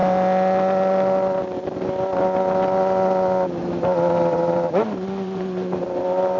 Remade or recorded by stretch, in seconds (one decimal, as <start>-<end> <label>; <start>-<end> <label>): 0.0-3.6 recorded; 3.6-6.4 remade